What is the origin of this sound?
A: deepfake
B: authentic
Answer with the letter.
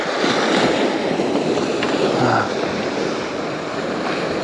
B